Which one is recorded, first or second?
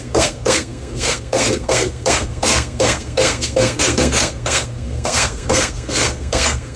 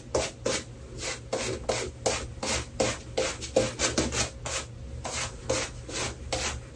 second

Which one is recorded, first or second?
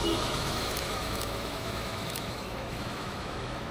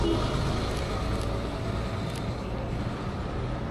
second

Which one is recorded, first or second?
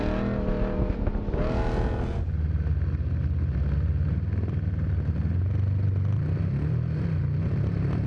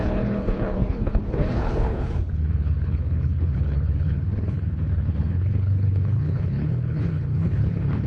first